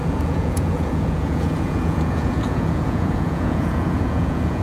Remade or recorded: remade